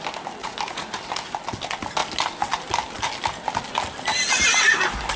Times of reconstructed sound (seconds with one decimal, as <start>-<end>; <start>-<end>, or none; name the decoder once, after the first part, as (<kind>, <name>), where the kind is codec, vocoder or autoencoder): 0.4-0.9 (vocoder, Vocos)